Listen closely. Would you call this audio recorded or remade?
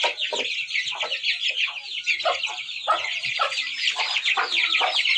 recorded